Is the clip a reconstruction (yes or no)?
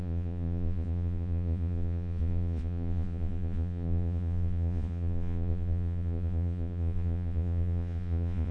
yes